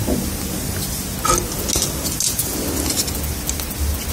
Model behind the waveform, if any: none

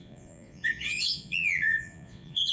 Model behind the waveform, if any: vocoder, Vocos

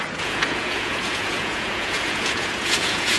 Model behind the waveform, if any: vocoder, Vocos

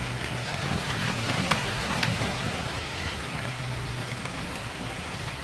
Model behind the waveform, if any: codec, SNAC